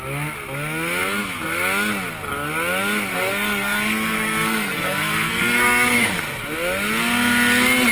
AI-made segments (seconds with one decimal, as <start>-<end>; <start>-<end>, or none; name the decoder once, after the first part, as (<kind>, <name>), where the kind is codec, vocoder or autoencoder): 3.1-6.1 (codec, SNAC)